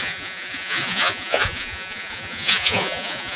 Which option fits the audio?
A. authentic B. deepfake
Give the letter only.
B